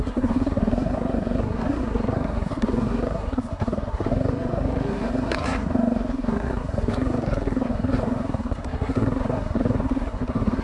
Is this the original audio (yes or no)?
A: no